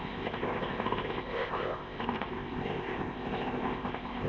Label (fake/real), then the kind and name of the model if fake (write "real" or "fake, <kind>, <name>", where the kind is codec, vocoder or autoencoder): fake, codec, ZipCodec